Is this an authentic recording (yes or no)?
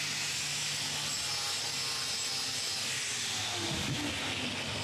yes